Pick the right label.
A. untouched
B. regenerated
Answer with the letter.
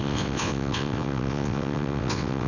B